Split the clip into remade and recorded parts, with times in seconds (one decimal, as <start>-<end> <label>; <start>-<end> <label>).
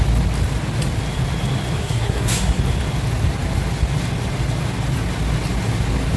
0.0-1.8 recorded; 1.8-2.6 remade; 2.6-6.2 recorded